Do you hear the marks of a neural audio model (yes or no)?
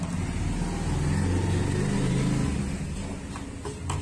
no